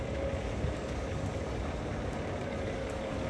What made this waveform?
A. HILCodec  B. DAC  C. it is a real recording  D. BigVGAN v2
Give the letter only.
B